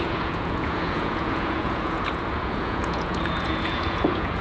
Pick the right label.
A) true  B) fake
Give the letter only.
B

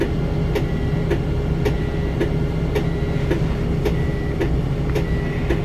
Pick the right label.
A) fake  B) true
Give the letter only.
B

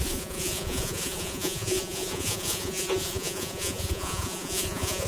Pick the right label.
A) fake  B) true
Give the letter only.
A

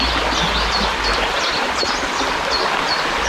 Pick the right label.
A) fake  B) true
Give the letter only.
B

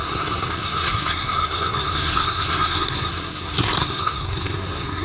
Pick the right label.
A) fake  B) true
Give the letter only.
A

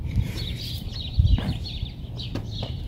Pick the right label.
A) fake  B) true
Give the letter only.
A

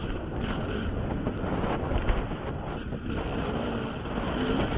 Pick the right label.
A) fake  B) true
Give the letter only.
B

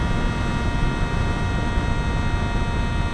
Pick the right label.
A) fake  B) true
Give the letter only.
B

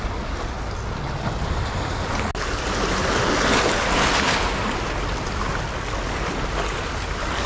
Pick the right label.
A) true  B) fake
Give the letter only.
A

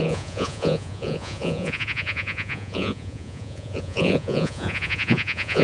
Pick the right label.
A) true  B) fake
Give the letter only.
B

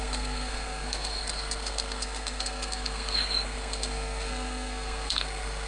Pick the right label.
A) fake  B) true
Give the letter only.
A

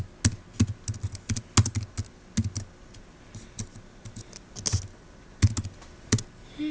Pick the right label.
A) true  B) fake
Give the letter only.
A